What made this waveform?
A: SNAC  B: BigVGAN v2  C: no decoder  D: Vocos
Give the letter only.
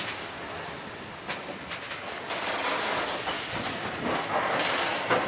C